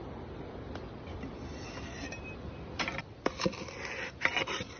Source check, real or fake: real